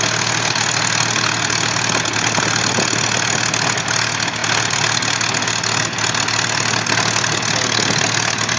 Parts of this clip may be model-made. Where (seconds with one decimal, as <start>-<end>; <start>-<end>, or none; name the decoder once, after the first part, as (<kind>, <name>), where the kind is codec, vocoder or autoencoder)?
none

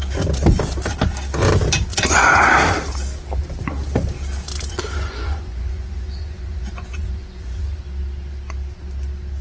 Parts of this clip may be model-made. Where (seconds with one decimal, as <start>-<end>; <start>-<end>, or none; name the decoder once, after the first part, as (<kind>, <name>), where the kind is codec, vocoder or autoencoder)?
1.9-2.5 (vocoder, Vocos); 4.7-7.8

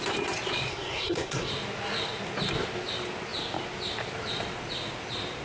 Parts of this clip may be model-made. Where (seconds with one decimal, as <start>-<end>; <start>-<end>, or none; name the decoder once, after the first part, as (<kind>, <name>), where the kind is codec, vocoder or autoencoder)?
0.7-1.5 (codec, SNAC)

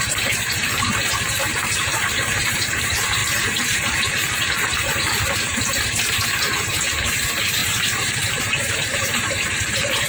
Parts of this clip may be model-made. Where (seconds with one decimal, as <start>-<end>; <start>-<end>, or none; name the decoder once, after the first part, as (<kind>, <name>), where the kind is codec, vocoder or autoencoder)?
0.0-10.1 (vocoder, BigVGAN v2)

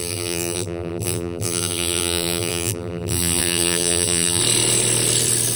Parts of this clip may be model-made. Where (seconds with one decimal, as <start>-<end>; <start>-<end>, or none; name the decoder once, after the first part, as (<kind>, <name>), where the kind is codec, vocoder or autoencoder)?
0.0-4.4 (vocoder, BigVGAN v2)